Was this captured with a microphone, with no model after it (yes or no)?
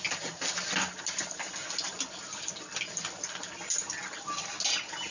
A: yes